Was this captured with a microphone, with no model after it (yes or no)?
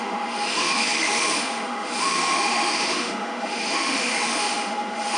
no